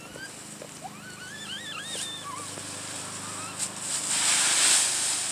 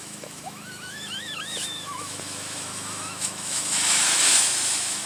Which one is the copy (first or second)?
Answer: second